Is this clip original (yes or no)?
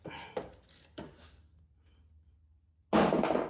yes